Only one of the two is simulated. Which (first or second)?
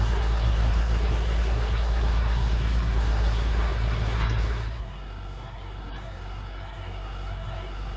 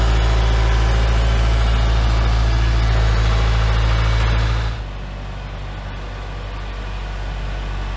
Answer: first